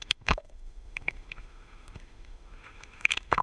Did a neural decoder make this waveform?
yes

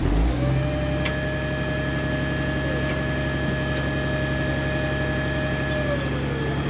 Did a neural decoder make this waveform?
no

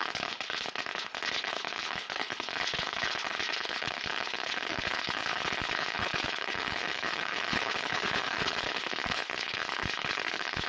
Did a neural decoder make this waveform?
yes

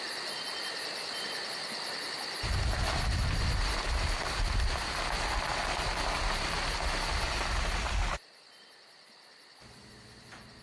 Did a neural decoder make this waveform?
no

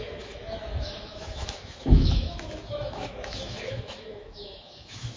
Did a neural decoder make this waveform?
yes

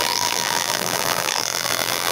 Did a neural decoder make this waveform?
yes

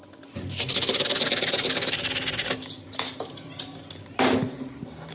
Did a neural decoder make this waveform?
no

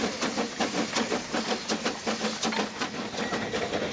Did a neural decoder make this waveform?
no